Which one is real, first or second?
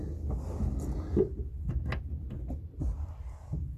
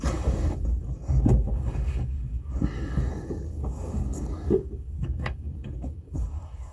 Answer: first